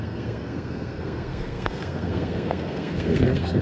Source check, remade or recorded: remade